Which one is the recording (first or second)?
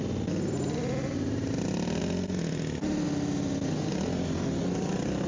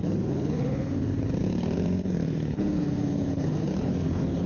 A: first